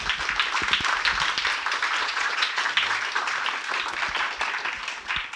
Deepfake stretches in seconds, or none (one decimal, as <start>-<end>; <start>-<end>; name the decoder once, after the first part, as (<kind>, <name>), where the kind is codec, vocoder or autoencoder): 2.0-2.6 (vocoder, Vocos)